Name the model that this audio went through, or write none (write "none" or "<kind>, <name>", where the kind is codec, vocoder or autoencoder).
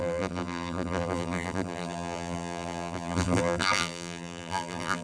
vocoder, BigVGAN v2